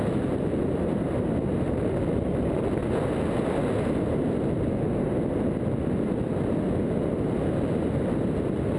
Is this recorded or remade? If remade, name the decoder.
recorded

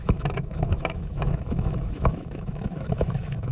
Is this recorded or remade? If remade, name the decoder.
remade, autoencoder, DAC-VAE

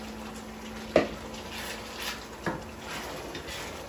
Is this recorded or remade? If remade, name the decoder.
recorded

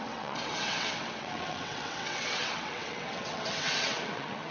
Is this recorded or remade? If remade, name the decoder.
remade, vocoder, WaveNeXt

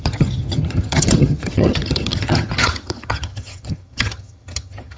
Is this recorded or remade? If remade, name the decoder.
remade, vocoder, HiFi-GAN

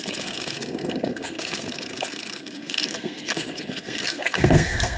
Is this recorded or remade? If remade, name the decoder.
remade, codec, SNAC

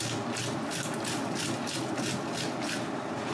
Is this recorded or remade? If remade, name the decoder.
recorded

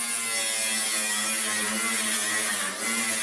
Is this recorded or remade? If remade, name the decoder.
recorded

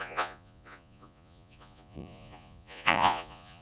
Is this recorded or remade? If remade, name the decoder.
remade, vocoder, Vocos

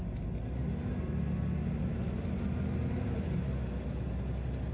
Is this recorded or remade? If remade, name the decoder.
recorded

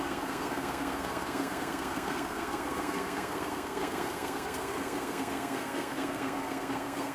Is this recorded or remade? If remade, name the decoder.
remade, codec, SNAC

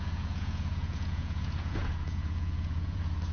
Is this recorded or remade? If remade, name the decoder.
remade, vocoder, Vocos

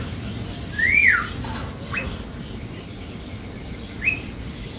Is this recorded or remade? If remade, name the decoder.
recorded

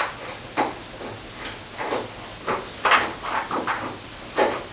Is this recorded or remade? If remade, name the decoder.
recorded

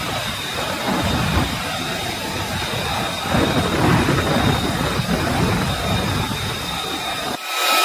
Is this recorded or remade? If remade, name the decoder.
recorded